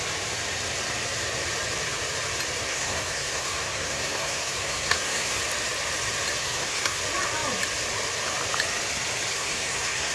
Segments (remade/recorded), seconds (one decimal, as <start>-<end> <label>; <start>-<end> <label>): 0.0-2.7 recorded; 2.7-5.4 remade; 5.4-6.4 recorded; 6.4-7.0 remade; 7.0-9.3 recorded; 9.3-10.1 remade